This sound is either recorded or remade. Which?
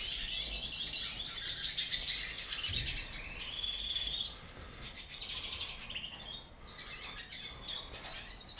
recorded